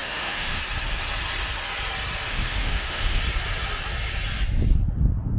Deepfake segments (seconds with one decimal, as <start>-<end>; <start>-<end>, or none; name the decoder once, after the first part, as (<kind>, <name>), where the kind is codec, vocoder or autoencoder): 0.0-0.6 (autoencoder, DAC-VAE); 2.3-3.2